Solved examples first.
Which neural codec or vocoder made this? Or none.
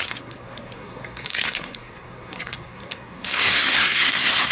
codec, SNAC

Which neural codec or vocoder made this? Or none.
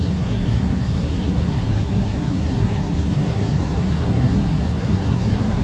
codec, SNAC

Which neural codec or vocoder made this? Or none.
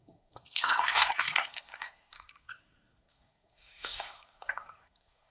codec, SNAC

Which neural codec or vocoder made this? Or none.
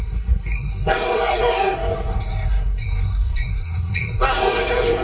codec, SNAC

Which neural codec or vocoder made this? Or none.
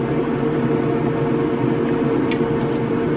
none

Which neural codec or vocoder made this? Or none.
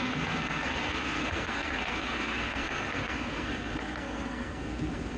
codec, SNAC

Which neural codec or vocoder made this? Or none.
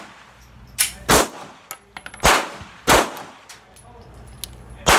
none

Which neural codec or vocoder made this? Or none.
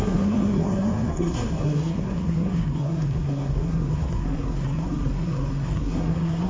codec, SNAC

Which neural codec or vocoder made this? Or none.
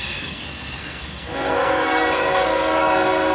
codec, SNAC